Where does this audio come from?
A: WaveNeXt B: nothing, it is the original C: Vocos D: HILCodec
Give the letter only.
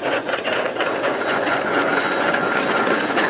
C